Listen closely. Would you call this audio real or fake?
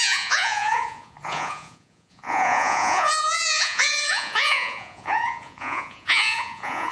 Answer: fake